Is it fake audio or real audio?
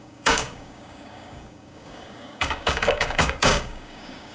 fake